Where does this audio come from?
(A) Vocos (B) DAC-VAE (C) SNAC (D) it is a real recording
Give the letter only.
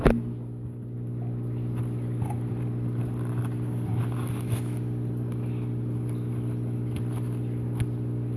D